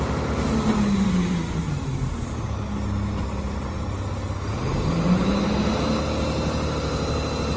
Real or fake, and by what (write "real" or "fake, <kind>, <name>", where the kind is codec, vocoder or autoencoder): real